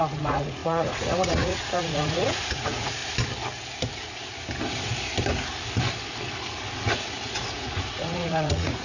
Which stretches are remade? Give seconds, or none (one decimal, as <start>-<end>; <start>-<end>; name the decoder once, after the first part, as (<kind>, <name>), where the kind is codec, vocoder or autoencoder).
0.0-3.0 (vocoder, Vocos); 6.9-8.8